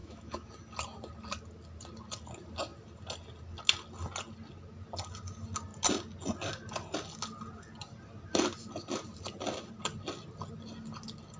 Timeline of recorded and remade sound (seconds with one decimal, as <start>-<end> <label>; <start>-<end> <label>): 0.0-0.5 remade; 0.5-11.4 recorded